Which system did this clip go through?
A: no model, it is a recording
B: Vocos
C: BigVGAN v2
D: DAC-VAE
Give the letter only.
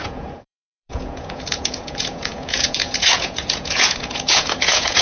B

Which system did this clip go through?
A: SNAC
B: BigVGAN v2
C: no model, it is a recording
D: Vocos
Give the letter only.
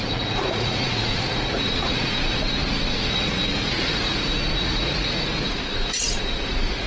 D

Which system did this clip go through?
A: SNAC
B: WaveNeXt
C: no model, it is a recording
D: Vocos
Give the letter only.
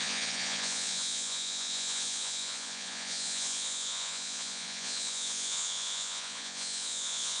D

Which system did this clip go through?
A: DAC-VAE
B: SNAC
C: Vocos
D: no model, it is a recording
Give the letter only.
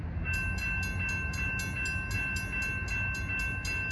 D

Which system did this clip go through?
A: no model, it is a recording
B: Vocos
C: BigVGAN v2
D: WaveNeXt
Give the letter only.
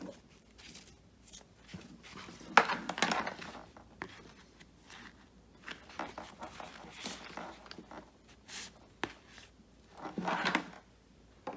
A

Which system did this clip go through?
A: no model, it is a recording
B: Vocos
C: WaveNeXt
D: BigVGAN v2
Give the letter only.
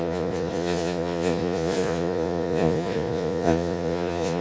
B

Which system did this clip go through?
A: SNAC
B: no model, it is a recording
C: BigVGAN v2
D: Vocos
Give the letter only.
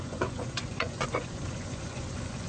D